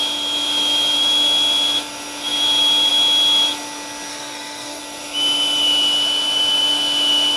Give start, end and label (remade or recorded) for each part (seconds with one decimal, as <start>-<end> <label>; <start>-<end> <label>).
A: 0.0-4.1 recorded; 4.1-4.8 remade; 4.8-7.4 recorded